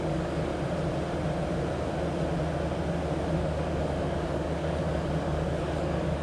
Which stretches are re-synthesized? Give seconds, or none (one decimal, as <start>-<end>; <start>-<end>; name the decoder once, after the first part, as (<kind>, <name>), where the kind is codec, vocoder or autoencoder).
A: 0.0-0.5 (codec, DAC); 3.4-6.2